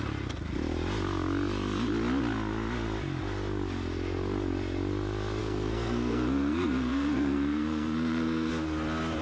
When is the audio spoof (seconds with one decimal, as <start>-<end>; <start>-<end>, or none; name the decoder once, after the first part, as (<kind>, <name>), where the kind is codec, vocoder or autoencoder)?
5.4-8.5 (codec, SNAC)